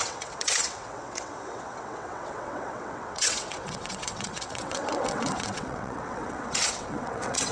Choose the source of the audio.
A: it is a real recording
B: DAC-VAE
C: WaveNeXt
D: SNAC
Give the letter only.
C